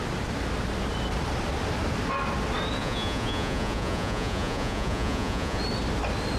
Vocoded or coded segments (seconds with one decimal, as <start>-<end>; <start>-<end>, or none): 2.8-5.6